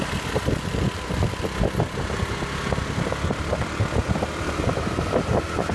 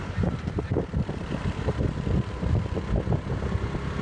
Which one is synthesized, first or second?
second